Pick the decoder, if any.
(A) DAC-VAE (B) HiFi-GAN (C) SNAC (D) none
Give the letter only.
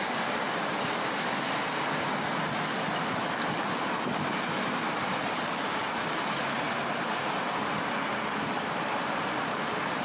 D